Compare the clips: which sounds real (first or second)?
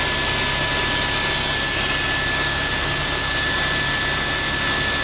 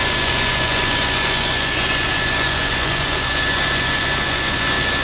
first